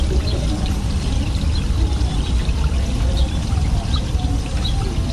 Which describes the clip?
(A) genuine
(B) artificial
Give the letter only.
B